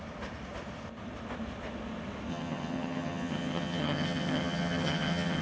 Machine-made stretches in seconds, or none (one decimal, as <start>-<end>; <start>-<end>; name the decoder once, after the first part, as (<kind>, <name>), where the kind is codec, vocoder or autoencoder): 2.3-5.4 (vocoder, HiFi-GAN)